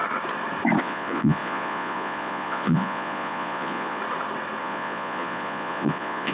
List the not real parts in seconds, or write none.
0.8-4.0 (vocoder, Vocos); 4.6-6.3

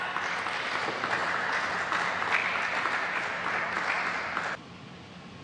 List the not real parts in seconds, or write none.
none

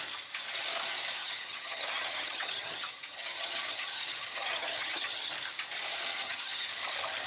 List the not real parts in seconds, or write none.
1.2-5.3 (vocoder, HiFi-GAN); 6.1-6.7

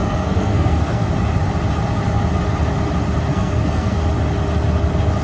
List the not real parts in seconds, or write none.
0.0-1.1 (codec, SNAC); 3.3-4.0

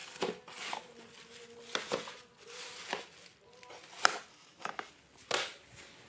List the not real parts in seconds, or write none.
4.3-4.9 (codec, DAC)